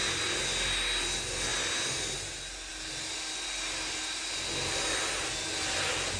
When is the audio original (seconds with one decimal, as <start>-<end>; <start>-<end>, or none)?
0.0-6.2